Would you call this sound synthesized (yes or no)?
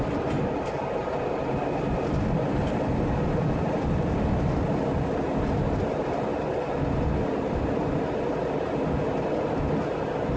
no